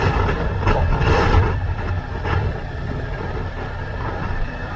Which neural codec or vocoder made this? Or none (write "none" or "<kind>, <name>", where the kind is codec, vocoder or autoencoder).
vocoder, BigVGAN v2